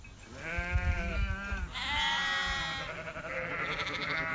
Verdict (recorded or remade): recorded